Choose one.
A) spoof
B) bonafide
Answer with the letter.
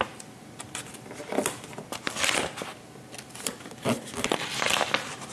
B